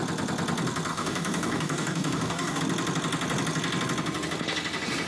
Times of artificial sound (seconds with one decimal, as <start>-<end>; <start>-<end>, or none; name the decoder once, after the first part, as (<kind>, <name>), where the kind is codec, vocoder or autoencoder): 0.9-2.6 (codec, DAC)

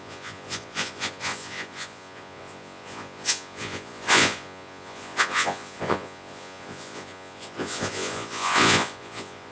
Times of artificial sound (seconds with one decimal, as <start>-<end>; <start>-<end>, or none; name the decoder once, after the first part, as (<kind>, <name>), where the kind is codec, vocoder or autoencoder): 0.0-9.5 (vocoder, Vocos)

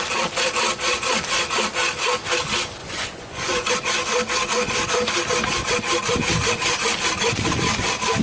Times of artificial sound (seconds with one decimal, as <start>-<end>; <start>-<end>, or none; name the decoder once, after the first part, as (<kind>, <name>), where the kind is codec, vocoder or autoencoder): 2.8-3.7 (vocoder, Vocos)

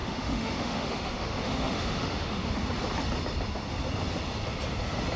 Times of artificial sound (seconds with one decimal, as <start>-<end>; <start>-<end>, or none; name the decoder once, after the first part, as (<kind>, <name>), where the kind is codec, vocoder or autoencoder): 0.0-2.5 (autoencoder, DAC-VAE)

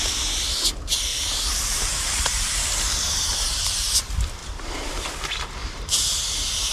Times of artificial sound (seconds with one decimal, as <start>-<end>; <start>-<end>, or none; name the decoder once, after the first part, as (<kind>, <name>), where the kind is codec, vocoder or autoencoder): 1.1-3.9 (vocoder, BigVGAN v2); 4.4-5.1; 5.6-6.2

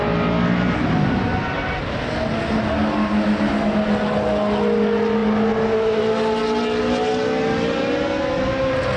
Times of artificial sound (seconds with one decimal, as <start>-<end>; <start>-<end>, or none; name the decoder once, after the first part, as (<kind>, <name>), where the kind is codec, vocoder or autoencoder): none